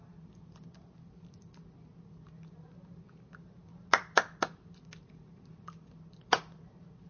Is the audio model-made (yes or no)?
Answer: no